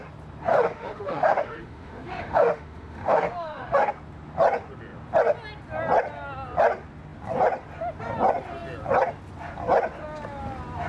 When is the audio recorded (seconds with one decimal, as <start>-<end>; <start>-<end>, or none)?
0.0-0.5; 3.9-10.9